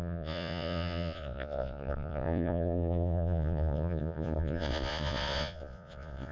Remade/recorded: remade